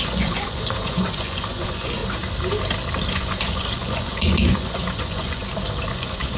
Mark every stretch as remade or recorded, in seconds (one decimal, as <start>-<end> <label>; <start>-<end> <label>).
0.0-2.0 remade; 2.0-3.1 recorded; 3.1-5.4 remade; 5.4-5.9 recorded; 5.9-6.4 remade